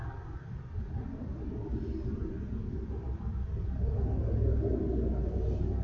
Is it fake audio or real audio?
real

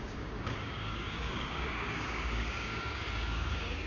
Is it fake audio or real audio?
fake